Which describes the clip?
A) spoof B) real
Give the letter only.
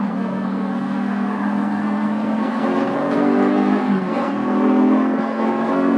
A